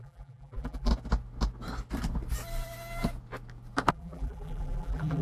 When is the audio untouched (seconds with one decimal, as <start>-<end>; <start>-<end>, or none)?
0.9-3.9